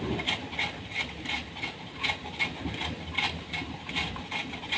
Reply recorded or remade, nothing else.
recorded